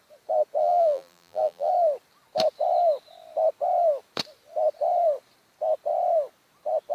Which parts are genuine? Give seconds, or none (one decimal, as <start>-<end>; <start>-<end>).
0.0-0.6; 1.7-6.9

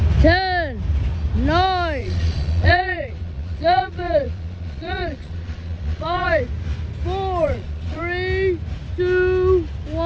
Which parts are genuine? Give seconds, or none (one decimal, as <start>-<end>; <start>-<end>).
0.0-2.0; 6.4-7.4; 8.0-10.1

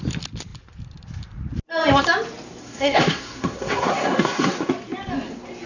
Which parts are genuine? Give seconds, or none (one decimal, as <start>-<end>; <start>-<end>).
0.0-2.6; 4.7-5.7

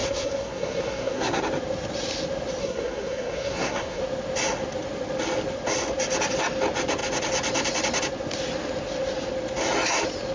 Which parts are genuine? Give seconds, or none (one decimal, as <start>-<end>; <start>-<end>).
1.4-2.6; 4.0-10.3